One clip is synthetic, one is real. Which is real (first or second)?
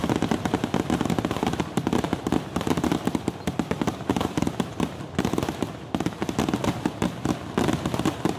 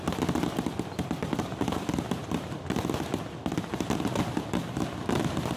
first